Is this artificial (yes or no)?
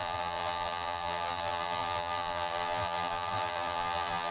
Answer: yes